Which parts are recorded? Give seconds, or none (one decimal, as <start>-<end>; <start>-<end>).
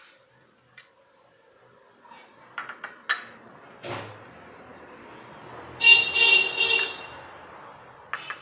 0.0-8.4